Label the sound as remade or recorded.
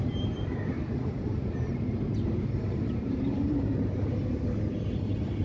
remade